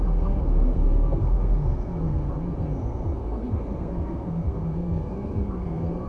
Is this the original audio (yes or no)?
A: no